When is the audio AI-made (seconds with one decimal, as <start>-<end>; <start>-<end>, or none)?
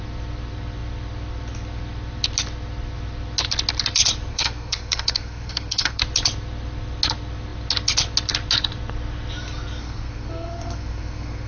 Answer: 4.3-6.0; 9.8-11.5